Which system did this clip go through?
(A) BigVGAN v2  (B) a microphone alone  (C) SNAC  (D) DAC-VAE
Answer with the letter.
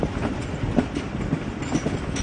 B